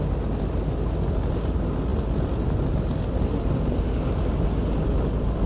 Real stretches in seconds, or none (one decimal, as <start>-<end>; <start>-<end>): 0.0-5.5